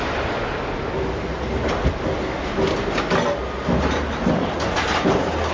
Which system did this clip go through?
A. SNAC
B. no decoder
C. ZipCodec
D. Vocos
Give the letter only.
B